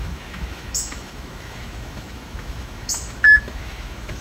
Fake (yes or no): yes